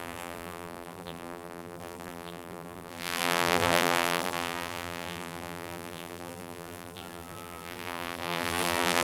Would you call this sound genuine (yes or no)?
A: no